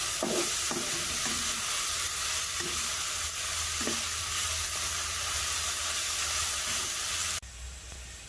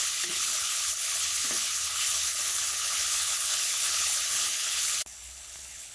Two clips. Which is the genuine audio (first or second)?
first